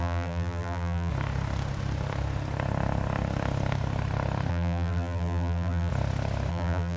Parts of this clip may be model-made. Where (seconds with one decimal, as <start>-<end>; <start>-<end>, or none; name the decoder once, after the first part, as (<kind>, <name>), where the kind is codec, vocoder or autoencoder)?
0.0-1.1 (vocoder, BigVGAN v2); 4.5-5.9; 6.5-7.0